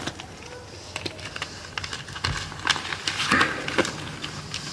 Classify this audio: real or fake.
real